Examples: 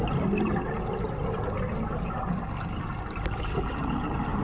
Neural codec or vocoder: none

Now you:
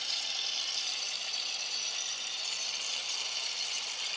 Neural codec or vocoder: vocoder, BigVGAN v2